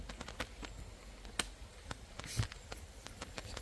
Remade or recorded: recorded